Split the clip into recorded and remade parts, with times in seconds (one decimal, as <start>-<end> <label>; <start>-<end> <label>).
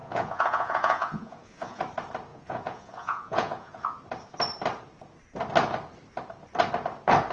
0.0-1.8 remade; 1.8-2.3 recorded; 2.3-4.0 remade; 4.0-7.3 recorded